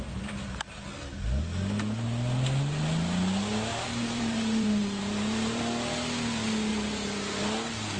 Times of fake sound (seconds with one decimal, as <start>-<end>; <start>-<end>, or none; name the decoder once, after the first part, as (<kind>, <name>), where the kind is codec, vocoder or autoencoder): 3.7-5.6 (vocoder, BigVGAN v2); 6.7-7.3